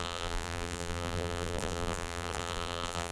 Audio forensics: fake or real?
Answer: fake